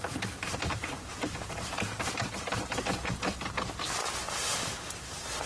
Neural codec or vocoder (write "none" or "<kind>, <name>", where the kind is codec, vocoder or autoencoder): vocoder, BigVGAN v2